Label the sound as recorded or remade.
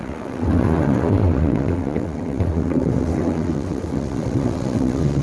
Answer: remade